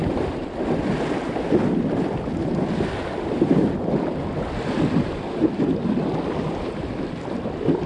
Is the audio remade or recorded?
recorded